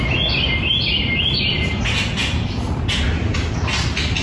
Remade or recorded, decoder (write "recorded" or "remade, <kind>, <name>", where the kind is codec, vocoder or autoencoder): recorded